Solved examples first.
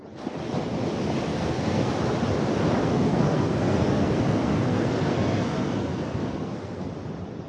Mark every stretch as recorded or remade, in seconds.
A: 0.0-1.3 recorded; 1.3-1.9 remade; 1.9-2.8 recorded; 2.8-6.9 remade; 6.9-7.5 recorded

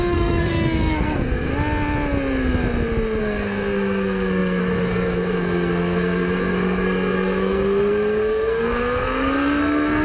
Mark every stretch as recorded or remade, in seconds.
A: 0.0-1.5 remade; 1.5-3.2 recorded; 3.2-10.0 remade

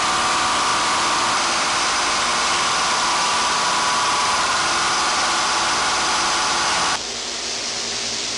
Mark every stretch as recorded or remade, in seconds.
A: 0.0-8.4 recorded

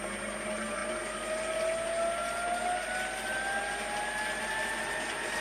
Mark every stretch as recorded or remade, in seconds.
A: 0.0-5.4 recorded